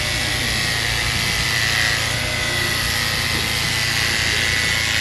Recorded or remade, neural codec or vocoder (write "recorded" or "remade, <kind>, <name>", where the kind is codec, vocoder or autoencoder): recorded